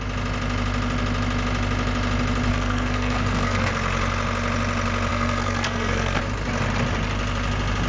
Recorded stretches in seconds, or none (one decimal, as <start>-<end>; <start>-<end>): 0.0-2.5; 3.7-5.1; 6.2-7.9